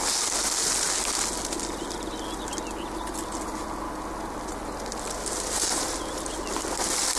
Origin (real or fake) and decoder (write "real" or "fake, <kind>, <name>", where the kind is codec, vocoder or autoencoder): real